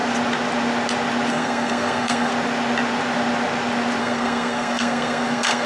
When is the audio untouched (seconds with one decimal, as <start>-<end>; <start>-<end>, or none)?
0.0-1.3; 2.3-4.0

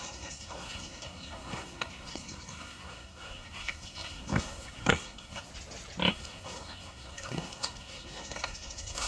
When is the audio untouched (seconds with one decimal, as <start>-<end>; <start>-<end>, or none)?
5.5-6.1